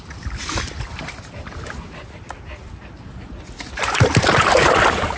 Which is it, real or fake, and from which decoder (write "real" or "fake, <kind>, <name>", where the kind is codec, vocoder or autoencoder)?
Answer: real